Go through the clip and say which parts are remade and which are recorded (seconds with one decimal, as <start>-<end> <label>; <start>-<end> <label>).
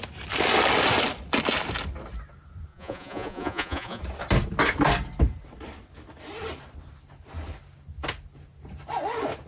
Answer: 0.0-2.7 recorded; 2.7-4.0 remade; 4.0-9.5 recorded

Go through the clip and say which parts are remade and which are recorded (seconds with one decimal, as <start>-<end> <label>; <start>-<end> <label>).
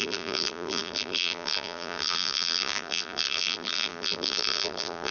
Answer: 0.0-5.1 remade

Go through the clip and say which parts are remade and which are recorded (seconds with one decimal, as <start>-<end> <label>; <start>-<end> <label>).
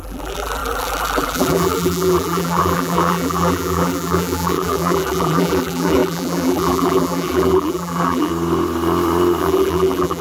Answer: 0.0-8.3 remade; 8.3-9.4 recorded; 9.4-10.2 remade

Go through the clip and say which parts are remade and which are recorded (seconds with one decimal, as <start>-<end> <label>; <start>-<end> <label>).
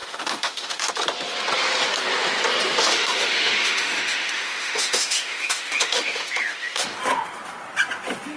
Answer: 0.0-0.9 remade; 0.9-2.8 recorded; 2.8-7.0 remade; 7.0-8.4 recorded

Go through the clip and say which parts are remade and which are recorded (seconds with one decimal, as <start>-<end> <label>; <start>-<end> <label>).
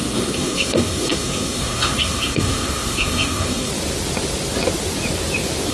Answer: 0.0-3.7 remade; 3.7-5.7 recorded